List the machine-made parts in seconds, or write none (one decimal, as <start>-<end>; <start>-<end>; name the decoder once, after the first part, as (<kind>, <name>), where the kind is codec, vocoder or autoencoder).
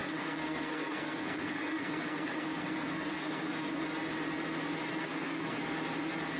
0.0-3.7 (codec, SNAC); 5.0-5.6